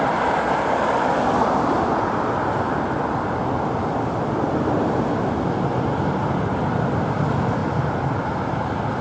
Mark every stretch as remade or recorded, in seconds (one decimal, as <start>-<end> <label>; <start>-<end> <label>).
0.0-9.0 recorded